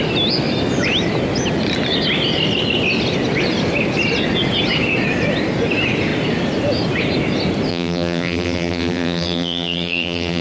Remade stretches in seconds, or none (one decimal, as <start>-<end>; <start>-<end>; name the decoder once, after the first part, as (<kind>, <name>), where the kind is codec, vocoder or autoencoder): 7.7-10.4 (vocoder, BigVGAN v2)